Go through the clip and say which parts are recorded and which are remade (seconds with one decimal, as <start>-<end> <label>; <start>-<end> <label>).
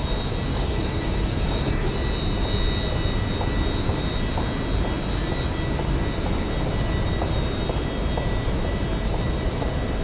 0.0-0.5 recorded; 0.5-1.9 remade; 1.9-10.0 recorded